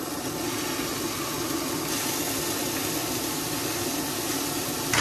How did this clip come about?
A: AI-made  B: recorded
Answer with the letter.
B